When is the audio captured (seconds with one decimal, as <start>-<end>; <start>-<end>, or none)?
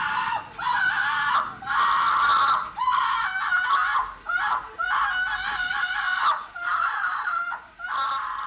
0.0-6.7; 7.3-8.5